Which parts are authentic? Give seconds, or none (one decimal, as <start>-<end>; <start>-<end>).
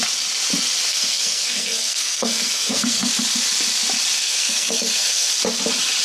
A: 0.0-0.9; 3.1-4.2; 5.3-6.0